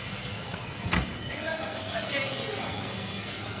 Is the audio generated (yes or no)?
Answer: yes